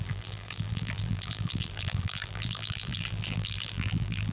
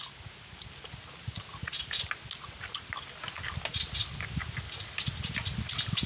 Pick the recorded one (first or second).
second